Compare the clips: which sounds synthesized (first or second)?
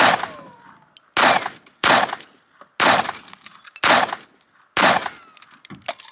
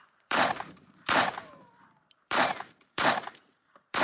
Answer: second